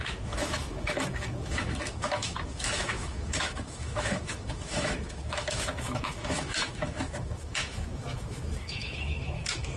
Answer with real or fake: fake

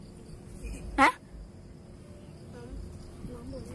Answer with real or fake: real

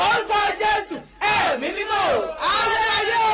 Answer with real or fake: real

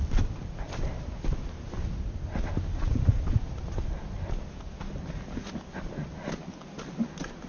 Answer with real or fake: real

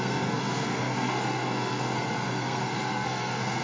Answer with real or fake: fake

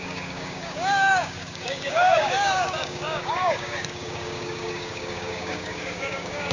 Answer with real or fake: fake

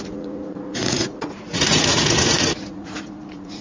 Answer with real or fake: fake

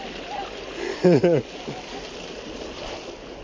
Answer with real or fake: real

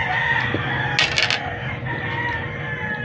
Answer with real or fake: real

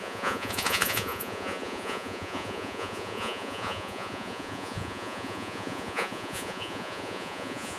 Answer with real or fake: fake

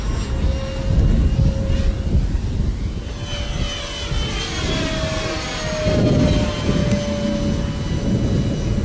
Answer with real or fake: real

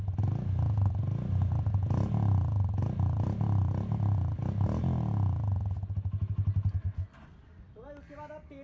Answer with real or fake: real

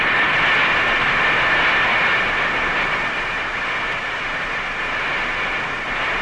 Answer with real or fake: real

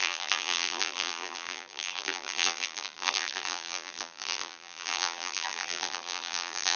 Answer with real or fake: fake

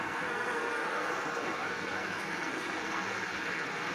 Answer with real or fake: fake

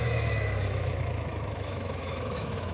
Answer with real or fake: fake